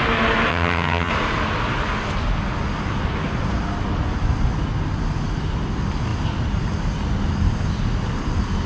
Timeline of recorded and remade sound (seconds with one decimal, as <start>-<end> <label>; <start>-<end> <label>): 0.0-0.5 recorded; 0.5-1.1 remade; 1.1-8.7 recorded